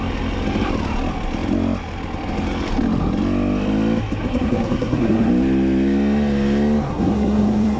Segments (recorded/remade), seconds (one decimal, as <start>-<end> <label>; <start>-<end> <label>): 0.0-4.2 recorded; 4.2-5.3 remade; 5.3-6.9 recorded; 6.9-7.8 remade